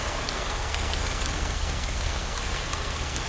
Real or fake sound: fake